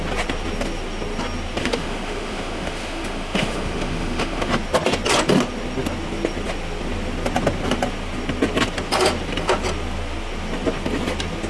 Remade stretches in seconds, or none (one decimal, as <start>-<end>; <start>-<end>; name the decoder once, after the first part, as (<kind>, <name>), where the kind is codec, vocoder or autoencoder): 1.6-4.5 (autoencoder, DAC-VAE)